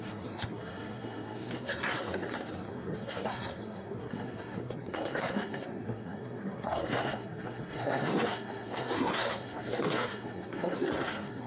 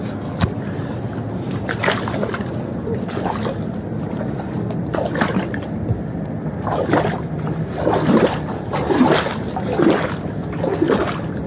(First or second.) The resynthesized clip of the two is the first